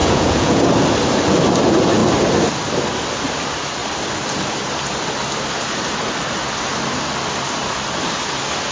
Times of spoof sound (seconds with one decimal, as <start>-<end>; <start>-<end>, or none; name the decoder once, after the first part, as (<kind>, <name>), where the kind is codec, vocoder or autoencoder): 0.0-0.6 (vocoder, Vocos)